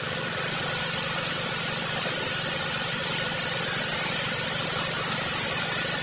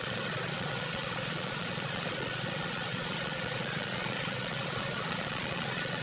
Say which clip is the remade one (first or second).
second